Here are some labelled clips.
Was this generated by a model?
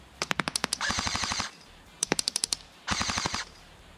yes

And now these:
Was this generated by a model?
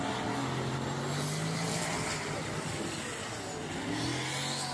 no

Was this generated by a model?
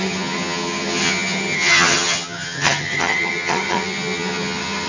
yes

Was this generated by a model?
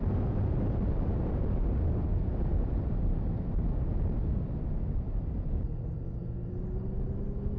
no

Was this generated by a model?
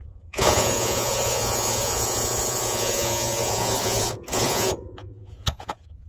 yes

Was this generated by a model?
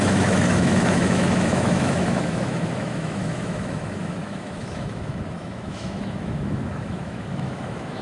yes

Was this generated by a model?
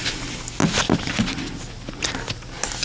no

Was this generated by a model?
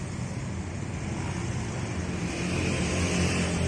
no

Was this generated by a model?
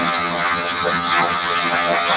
yes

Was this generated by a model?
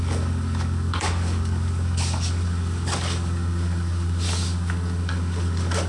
yes